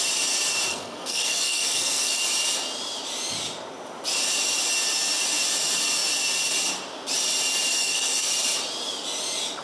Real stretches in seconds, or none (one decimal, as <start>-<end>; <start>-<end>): 0.0-0.7; 2.2-7.7; 8.3-9.6